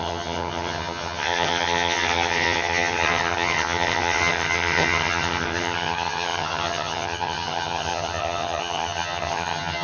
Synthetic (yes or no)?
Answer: yes